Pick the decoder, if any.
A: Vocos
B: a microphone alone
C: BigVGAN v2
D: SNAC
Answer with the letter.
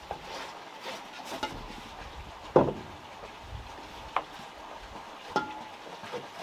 B